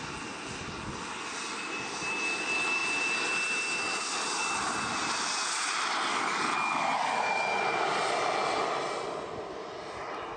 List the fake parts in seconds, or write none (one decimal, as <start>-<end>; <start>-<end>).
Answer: 6.1-7.4